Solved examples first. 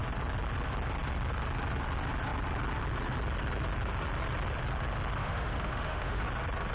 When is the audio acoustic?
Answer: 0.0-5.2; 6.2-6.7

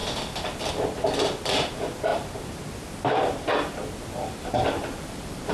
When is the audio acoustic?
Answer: 0.7-2.1

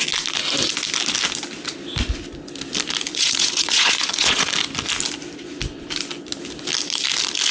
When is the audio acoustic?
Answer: 0.0-3.1; 4.5-7.5

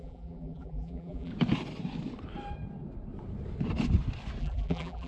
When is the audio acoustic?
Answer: 1.3-4.4

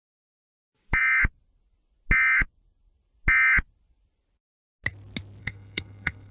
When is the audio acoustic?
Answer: 0.0-5.4

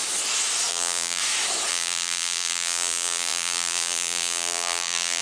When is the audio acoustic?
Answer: 0.0-0.7; 1.2-1.7

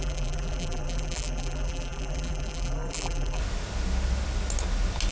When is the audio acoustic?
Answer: 3.4-5.1